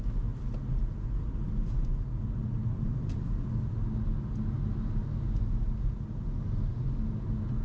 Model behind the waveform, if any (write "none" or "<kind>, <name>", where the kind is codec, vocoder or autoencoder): none